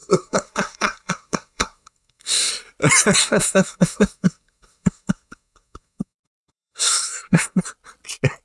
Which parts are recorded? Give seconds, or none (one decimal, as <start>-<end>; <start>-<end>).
2.5-3.2; 7.6-8.4